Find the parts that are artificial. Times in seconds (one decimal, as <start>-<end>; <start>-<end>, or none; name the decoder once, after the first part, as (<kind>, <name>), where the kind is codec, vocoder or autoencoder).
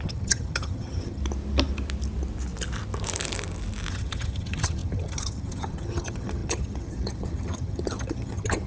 0.0-1.2 (vocoder, HiFi-GAN); 3.9-8.7